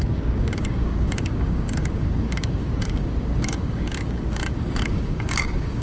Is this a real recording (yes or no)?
no